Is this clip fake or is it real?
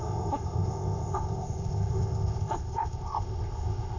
fake